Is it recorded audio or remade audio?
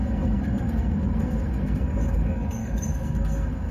remade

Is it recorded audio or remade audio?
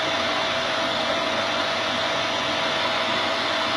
remade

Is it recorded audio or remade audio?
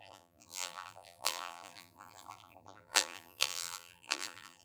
remade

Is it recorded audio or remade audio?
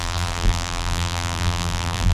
remade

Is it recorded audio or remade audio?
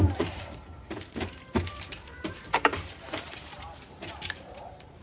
remade